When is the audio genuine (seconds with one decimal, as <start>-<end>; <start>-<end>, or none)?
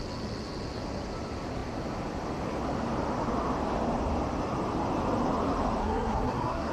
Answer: 0.0-5.8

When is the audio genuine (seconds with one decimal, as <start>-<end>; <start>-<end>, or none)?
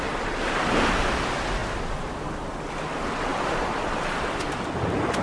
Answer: 0.0-3.3; 4.4-5.2